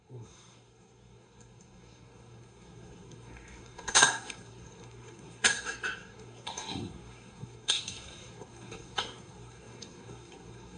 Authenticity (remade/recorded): remade